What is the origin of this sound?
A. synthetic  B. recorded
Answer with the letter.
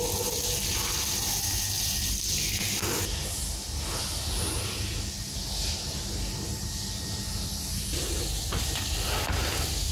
B